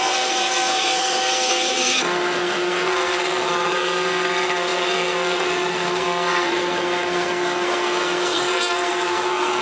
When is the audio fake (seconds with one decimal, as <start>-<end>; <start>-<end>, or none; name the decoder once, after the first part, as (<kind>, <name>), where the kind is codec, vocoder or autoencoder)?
0.0-9.6 (codec, SNAC)